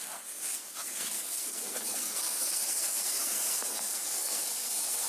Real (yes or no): no